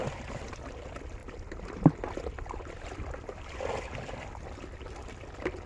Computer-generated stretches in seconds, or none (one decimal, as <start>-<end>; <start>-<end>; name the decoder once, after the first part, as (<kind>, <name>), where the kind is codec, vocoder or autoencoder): none